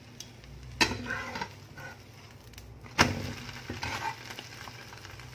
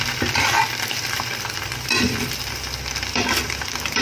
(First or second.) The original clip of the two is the first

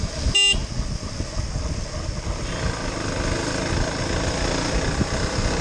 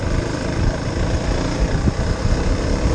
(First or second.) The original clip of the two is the first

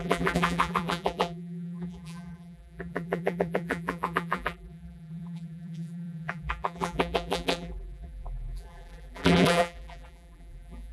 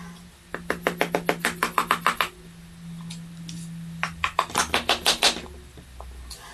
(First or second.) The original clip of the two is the second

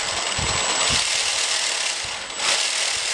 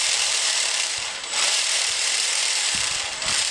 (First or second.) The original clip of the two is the first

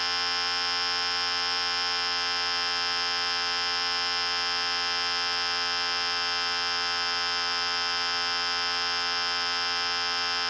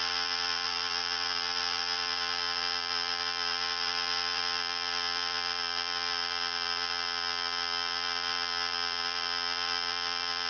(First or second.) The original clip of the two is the first